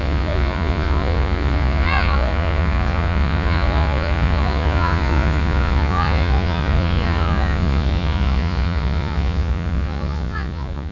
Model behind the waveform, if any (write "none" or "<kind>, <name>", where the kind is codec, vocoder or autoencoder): vocoder, Vocos